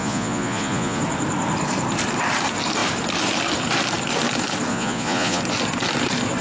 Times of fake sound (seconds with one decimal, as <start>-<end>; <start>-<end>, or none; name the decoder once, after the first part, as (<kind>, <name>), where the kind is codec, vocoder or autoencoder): 0.0-1.0 (vocoder, Vocos); 4.7-5.4

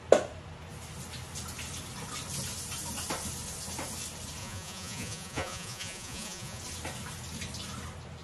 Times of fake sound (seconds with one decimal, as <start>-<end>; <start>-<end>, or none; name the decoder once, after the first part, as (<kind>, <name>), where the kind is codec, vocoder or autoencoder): 4.4-6.6 (vocoder, Vocos)